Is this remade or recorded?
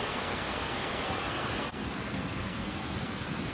remade